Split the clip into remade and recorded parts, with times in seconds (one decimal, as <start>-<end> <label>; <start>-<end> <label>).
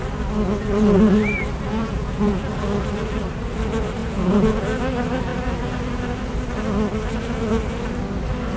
0.0-1.8 recorded; 1.8-2.5 remade; 2.5-4.0 recorded; 4.0-4.8 remade; 4.8-8.6 recorded